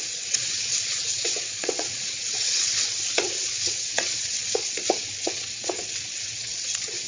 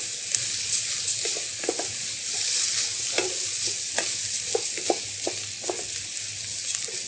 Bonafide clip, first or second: second